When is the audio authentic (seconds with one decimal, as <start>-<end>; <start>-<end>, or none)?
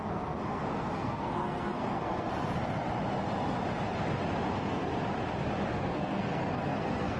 2.3-4.5; 4.9-5.8